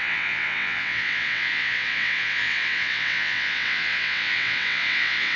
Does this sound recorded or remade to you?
remade